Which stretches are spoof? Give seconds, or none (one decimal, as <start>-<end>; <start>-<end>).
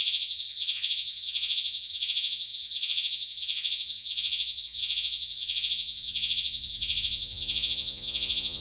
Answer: 0.0-8.6